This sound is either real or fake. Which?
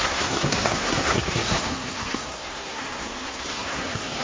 fake